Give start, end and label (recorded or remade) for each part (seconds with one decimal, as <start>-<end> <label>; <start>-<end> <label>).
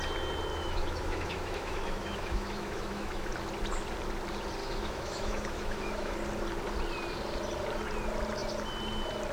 0.0-0.5 recorded; 0.5-3.3 remade; 3.3-4.6 recorded; 4.6-6.2 remade; 6.2-9.3 recorded